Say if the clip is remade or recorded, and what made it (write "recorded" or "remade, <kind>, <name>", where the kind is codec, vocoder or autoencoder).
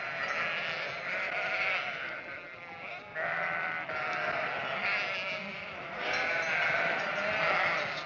recorded